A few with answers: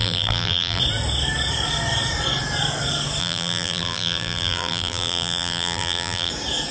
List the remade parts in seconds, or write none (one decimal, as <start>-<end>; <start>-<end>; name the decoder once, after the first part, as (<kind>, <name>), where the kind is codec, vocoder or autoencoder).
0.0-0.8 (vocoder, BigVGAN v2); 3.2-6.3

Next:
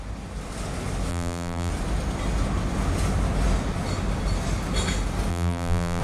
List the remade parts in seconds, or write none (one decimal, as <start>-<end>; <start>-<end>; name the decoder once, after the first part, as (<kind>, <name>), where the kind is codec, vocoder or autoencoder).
1.1-1.7 (vocoder, BigVGAN v2); 5.3-6.0

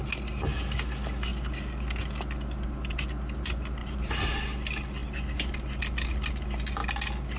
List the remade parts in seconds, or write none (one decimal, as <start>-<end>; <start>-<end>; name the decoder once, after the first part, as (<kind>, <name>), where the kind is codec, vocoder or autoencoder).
3.8-4.3 (vocoder, BigVGAN v2)

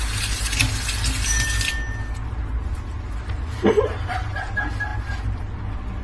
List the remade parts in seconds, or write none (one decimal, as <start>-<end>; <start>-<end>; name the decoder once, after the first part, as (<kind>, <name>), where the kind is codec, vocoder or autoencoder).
none

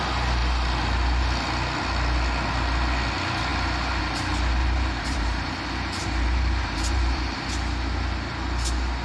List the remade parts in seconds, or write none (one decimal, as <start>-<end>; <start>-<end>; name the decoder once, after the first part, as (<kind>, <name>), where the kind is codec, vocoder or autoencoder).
4.6-7.5 (vocoder, BigVGAN v2)

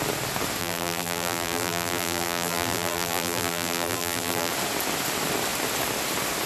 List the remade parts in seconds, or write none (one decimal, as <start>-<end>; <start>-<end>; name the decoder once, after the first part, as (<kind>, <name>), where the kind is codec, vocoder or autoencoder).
0.6-4.5 (vocoder, BigVGAN v2)